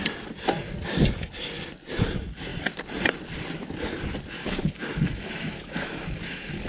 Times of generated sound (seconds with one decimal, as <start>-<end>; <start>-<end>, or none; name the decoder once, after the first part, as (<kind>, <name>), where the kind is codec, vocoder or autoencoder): 4.4-6.7 (autoencoder, DAC-VAE)